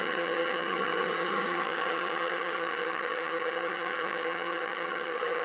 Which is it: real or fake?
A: fake